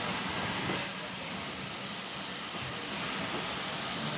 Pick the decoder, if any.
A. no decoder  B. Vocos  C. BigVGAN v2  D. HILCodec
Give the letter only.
A